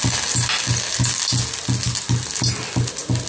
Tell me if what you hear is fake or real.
real